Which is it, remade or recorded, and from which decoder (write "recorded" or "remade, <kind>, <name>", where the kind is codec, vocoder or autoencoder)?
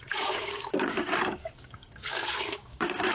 remade, codec, DAC